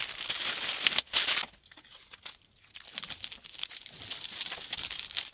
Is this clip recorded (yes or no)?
yes